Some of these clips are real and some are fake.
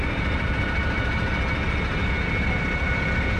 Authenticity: real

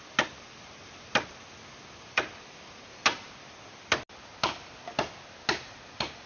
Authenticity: real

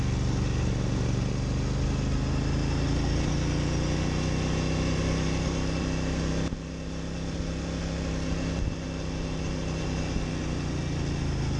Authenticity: real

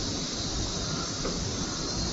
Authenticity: fake